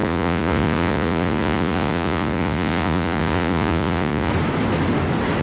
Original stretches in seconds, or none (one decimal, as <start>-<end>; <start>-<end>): 4.3-5.4